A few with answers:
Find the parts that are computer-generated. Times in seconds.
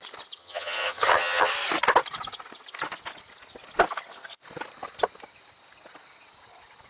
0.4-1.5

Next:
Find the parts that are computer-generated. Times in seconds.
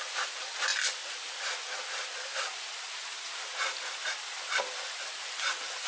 none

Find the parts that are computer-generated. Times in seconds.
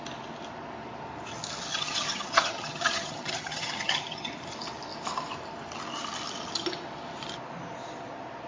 1.7-4.3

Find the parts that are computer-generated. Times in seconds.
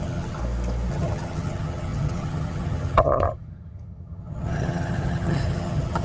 0.0-0.4; 0.9-6.0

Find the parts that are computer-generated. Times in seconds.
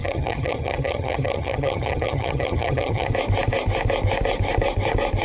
0.0-3.1